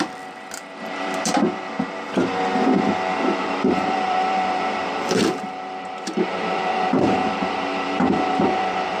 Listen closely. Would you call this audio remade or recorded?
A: remade